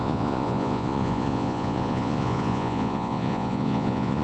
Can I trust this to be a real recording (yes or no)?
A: no